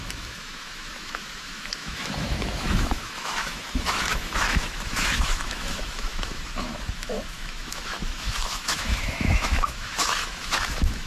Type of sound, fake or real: fake